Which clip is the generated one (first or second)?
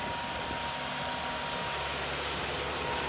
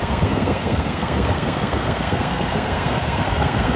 second